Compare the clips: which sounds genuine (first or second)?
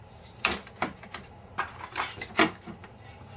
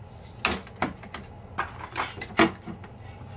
second